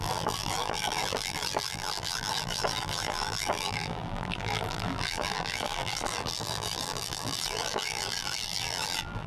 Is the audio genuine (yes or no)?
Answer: no